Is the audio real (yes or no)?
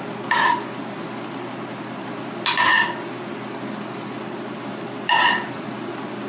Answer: yes